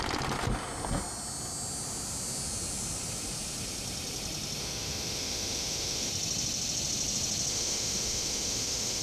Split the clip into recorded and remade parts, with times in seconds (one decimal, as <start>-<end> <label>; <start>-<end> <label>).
0.0-4.6 recorded; 4.6-6.1 remade; 6.1-7.5 recorded; 7.5-9.0 remade